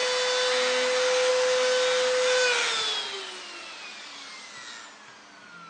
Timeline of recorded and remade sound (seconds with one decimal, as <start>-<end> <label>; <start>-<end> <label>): 0.0-5.7 recorded